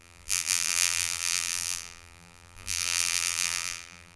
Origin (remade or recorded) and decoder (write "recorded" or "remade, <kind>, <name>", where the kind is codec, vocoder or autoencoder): remade, vocoder, BigVGAN v2